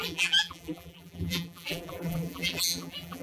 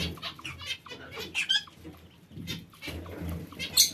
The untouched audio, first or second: second